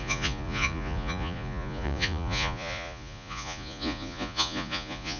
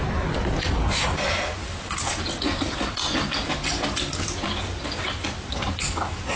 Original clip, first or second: second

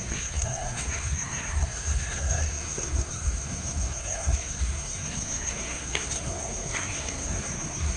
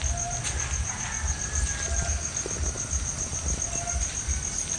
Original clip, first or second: second